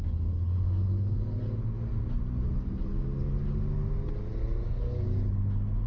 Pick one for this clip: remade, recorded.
recorded